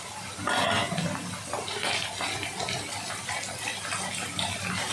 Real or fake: real